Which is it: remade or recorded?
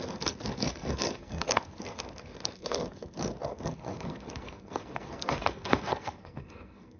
remade